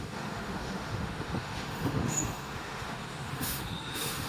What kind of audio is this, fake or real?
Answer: fake